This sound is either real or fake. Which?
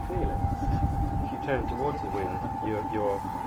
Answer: real